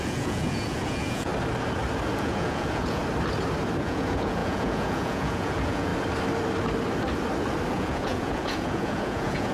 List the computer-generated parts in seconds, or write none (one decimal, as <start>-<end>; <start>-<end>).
0.0-1.3; 2.2-3.0; 3.8-5.9; 7.7-9.5